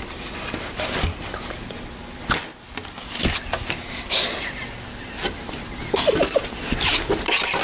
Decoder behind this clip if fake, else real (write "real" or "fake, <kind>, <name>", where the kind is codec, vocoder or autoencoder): real